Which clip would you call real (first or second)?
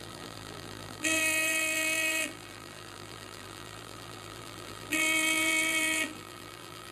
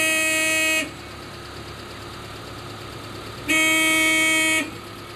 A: second